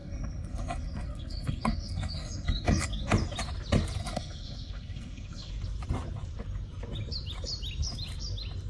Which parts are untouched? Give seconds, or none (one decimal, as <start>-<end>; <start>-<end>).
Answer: 3.1-4.0; 5.5-8.7